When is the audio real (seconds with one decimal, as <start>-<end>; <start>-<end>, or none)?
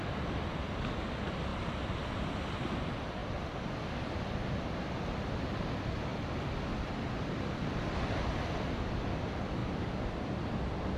0.0-6.1; 7.1-9.6